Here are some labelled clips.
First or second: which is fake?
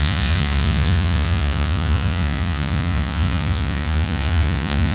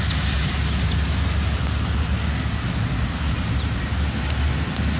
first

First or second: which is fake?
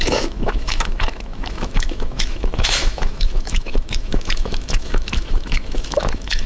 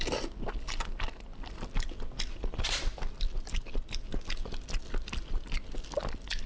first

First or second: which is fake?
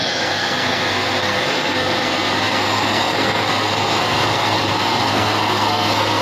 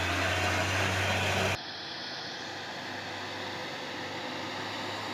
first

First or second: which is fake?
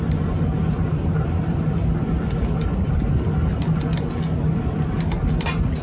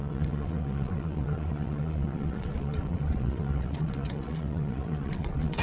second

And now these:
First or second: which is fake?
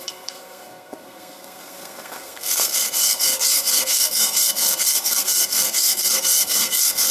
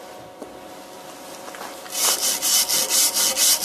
first